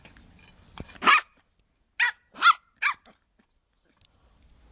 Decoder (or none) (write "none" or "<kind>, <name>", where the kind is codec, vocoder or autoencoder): none